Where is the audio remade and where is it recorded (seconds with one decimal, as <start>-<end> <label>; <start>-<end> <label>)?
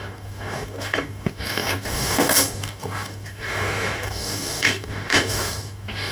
0.0-6.1 remade